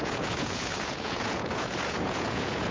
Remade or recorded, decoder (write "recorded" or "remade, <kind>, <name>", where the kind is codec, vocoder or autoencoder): remade, vocoder, Vocos